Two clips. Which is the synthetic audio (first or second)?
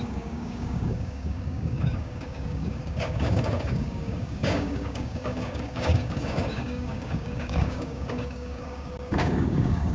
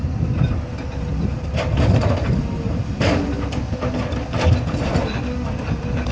first